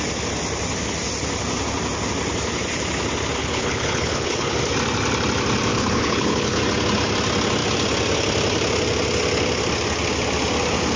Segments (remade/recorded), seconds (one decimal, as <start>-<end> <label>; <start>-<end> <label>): 0.0-3.4 recorded; 3.4-4.6 remade; 4.6-5.7 recorded; 5.7-6.6 remade; 6.6-11.0 recorded